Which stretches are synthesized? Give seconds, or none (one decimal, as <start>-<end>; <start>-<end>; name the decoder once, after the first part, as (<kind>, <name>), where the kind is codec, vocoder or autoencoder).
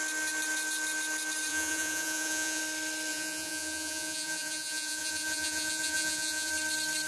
1.5-2.6 (vocoder, Vocos); 3.1-6.5